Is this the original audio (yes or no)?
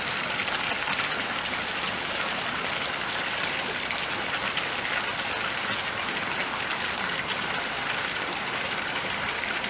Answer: yes